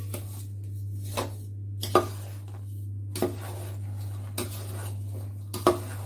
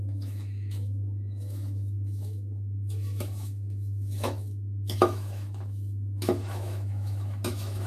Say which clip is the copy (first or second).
second